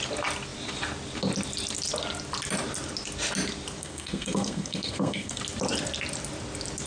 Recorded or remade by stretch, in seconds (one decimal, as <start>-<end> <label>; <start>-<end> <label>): 0.0-3.8 recorded; 3.8-5.4 remade; 5.4-6.9 recorded

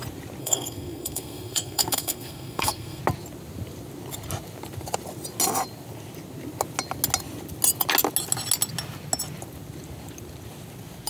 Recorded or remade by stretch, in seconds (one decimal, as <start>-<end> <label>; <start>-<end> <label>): 0.0-0.4 recorded; 0.4-3.0 remade; 3.0-11.1 recorded

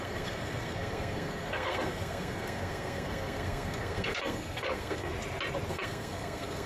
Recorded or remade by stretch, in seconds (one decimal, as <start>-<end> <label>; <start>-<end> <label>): 0.0-5.1 remade; 5.1-5.7 recorded; 5.7-6.7 remade

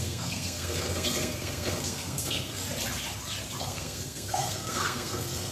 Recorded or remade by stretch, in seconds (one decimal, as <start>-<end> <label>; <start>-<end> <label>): 0.0-2.6 remade; 2.6-3.6 recorded; 3.6-5.5 remade

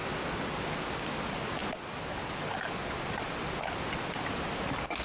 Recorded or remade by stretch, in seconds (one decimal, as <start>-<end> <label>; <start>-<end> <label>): 0.0-5.0 recorded

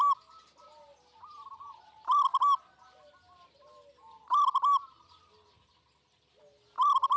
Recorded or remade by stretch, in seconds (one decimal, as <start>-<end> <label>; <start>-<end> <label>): 0.0-7.2 recorded

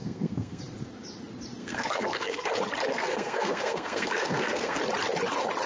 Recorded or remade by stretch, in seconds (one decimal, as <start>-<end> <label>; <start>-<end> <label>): 0.0-0.6 remade; 0.6-1.6 recorded; 1.6-2.5 remade; 2.5-2.9 recorded; 2.9-4.8 remade; 4.8-5.7 recorded

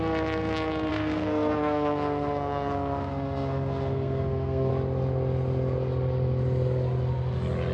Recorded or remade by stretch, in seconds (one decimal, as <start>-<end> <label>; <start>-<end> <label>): 0.0-0.9 recorded; 0.9-4.7 remade; 4.7-7.7 recorded